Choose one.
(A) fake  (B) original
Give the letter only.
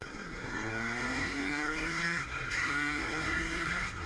A